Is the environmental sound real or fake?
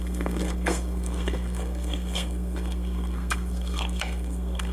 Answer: fake